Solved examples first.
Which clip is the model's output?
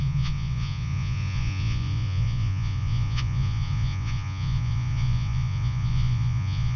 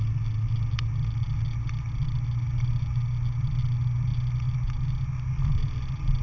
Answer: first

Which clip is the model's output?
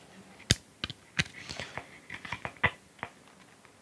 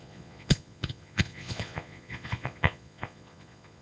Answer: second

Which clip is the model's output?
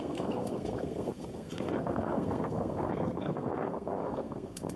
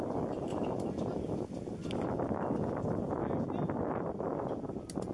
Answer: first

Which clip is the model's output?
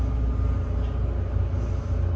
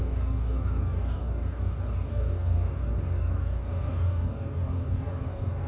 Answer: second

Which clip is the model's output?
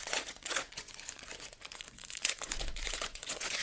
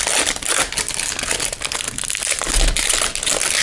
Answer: first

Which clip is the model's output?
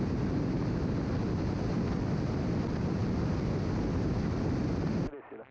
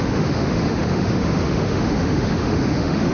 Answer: second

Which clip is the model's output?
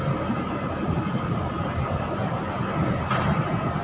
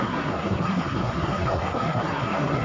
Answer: second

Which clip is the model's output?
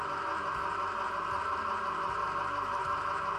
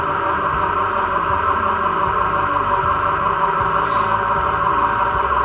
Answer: second